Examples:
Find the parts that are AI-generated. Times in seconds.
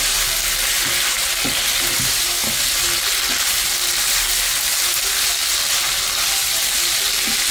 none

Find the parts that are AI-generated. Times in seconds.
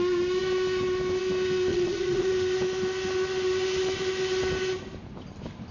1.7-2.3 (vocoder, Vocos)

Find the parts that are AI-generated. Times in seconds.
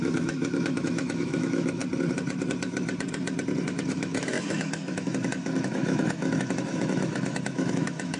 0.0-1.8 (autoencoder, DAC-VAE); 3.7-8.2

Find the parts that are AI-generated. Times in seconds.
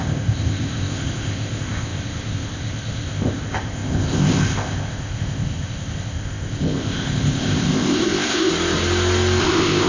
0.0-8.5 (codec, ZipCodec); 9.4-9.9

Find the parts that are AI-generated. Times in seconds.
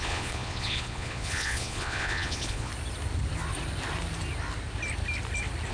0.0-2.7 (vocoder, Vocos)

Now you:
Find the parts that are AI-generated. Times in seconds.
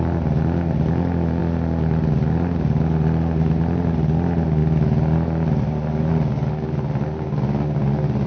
none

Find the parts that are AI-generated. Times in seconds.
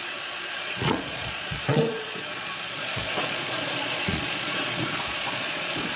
0.0-6.0 (vocoder, Vocos)